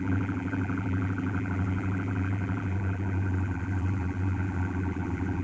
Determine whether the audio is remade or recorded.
remade